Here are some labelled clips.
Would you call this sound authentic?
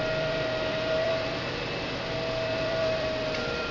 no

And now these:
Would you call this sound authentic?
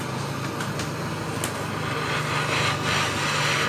yes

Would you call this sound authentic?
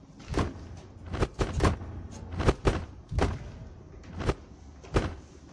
yes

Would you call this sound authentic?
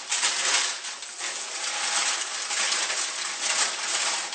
yes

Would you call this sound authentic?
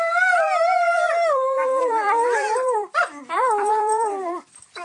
no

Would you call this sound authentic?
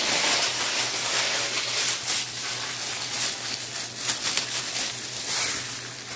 yes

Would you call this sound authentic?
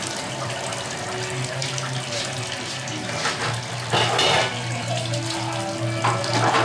yes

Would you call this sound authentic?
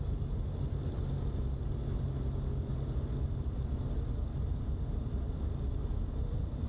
yes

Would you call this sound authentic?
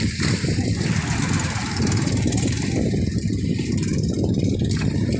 no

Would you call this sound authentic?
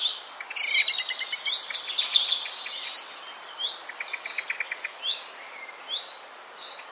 yes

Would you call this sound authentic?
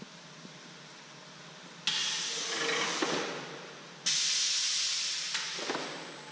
yes